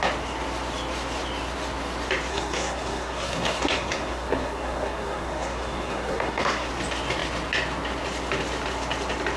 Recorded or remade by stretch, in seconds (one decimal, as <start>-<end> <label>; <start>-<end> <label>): 0.0-2.3 recorded; 2.3-6.7 remade; 6.7-9.4 recorded